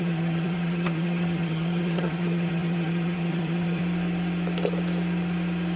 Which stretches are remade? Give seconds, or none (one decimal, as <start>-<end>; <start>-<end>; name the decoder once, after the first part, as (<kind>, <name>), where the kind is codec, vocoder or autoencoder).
0.0-3.8 (vocoder, HiFi-GAN)